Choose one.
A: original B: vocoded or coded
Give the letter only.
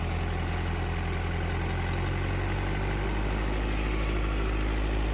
A